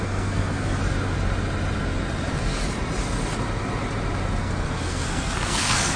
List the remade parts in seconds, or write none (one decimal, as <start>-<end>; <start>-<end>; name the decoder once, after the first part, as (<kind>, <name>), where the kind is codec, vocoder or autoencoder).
0.0-0.8 (codec, SNAC); 4.4-6.0